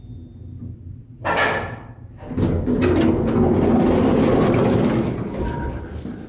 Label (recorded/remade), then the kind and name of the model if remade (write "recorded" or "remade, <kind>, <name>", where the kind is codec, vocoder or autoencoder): recorded